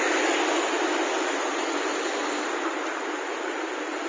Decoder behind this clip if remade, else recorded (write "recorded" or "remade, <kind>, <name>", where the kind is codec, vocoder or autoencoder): recorded